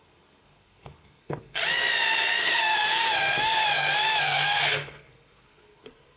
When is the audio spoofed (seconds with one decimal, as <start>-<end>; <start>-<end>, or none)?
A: 0.0-1.6; 2.4-3.6; 4.2-6.2